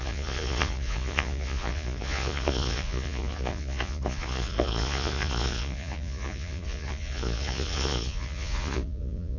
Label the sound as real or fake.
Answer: fake